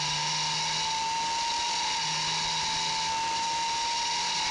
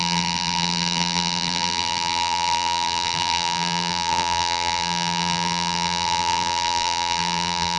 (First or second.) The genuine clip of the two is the first